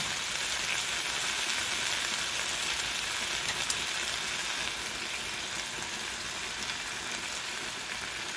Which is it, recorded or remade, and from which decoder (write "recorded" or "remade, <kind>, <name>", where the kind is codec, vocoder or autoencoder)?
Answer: recorded